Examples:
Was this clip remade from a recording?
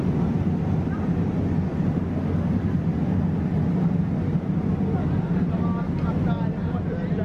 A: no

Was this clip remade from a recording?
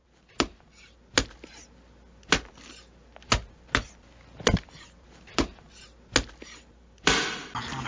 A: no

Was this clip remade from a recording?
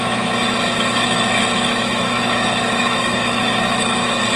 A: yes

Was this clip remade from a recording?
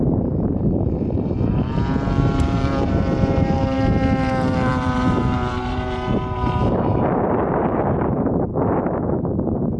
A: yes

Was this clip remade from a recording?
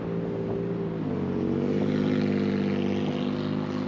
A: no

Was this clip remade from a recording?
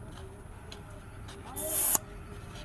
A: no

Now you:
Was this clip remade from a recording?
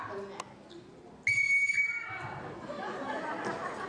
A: no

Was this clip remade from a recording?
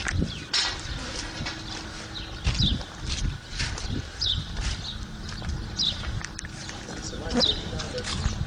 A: no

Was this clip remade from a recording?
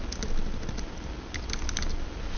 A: no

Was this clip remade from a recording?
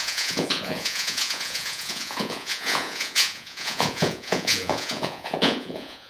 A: yes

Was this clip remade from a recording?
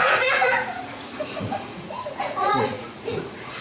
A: yes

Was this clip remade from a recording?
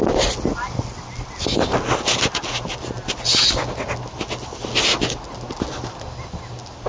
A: no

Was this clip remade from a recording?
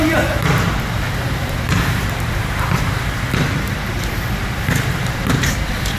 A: yes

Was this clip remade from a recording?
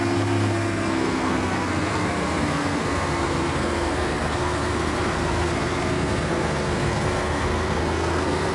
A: yes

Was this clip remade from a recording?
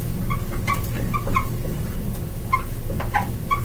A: no